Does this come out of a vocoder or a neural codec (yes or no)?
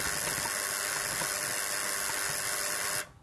no